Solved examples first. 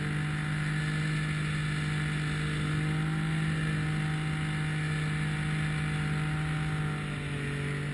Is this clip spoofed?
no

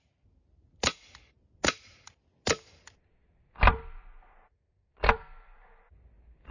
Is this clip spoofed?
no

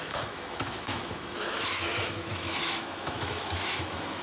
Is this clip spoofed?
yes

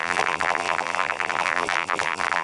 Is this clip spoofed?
yes